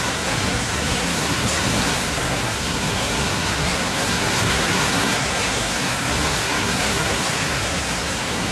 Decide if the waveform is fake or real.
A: fake